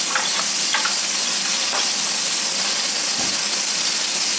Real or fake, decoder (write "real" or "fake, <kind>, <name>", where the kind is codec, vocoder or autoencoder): real